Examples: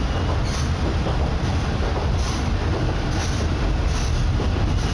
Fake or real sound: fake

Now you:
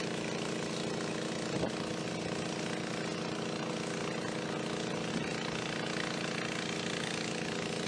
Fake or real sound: real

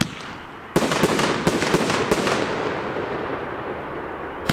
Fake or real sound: real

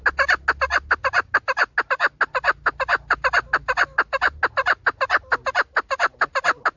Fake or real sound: real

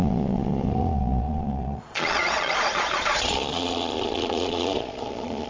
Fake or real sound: fake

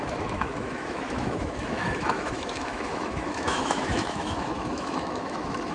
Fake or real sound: fake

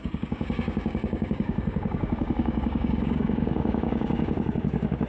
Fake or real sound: fake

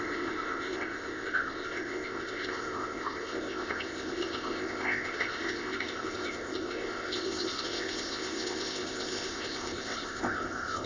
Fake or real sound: fake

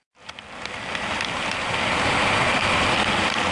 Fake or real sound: real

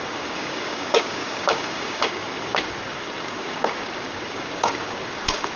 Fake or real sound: fake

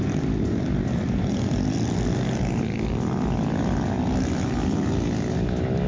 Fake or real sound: real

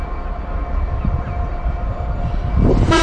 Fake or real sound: real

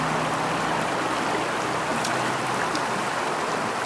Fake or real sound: real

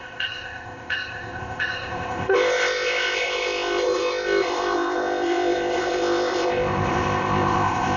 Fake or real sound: fake